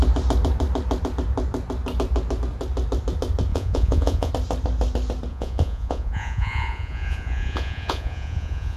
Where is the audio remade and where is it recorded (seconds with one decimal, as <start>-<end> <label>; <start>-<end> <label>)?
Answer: 0.0-3.5 recorded; 3.5-4.3 remade; 4.3-5.3 recorded; 5.3-8.8 remade